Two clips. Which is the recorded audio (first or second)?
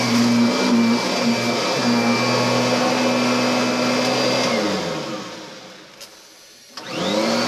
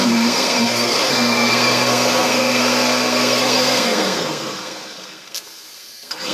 first